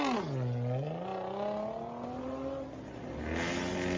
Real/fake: real